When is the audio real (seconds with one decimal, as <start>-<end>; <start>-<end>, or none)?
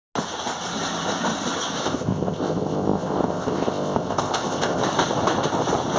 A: 0.0-1.8; 4.8-6.0